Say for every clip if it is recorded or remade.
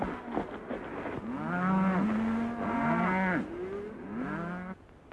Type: recorded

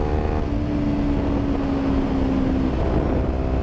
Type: recorded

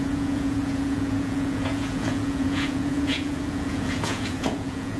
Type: remade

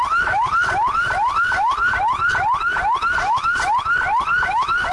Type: recorded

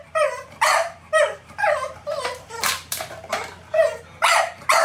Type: remade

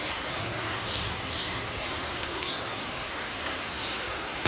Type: remade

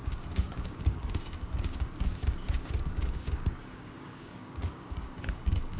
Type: remade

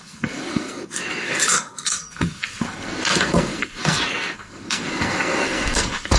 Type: remade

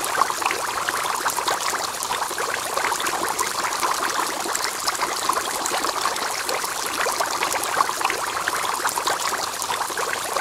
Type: recorded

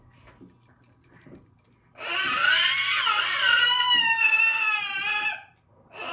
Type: recorded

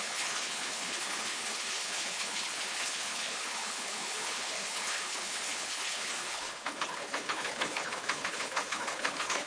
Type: remade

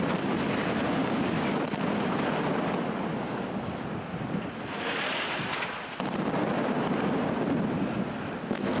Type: recorded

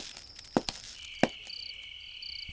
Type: recorded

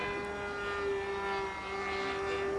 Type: recorded